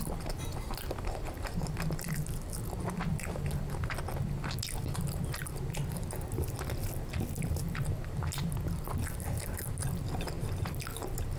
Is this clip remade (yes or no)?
no